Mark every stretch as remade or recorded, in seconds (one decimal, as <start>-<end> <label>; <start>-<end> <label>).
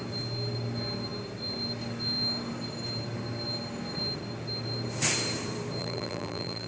0.0-5.8 recorded; 5.8-6.7 remade